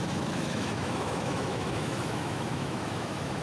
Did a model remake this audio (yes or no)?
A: yes